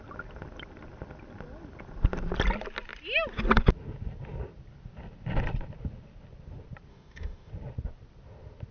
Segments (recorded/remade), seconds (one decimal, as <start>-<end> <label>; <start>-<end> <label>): 0.0-6.9 recorded; 6.9-7.5 remade; 7.5-8.7 recorded